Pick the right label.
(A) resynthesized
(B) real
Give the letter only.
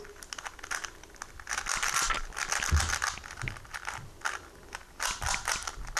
B